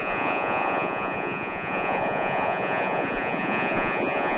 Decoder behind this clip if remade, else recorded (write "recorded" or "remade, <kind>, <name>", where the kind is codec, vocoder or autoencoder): remade, vocoder, Vocos